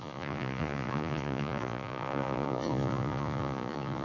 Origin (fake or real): fake